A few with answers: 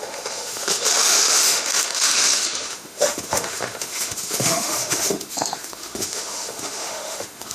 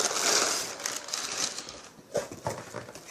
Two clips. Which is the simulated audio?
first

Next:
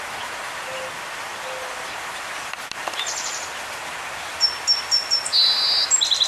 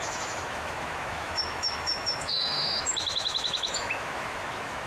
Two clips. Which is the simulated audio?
second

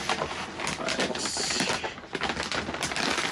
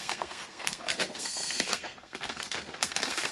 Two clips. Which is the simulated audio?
second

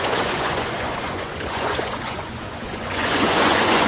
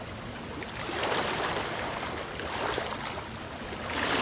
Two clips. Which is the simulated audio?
first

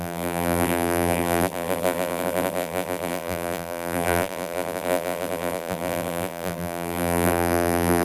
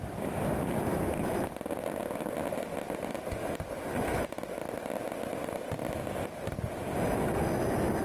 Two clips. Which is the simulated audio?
first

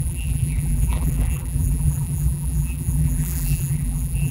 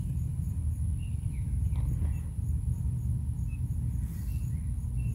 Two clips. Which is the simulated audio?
first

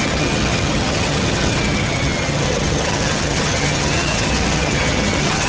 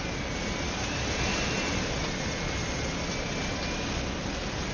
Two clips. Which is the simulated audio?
first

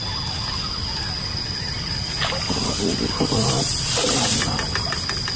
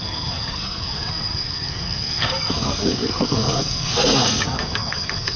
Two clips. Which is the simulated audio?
second